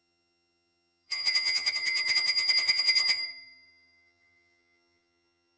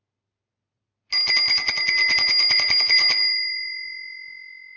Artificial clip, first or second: first